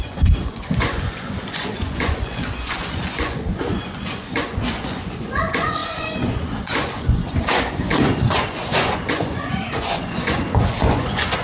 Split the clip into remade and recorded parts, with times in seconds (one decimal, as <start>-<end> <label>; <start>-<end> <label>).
0.0-11.4 remade